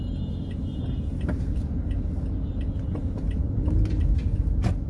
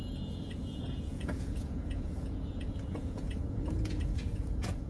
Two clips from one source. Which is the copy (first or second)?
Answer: second